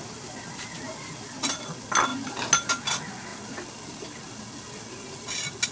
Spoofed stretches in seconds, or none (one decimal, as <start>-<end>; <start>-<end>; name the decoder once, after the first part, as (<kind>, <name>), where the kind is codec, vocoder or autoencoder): none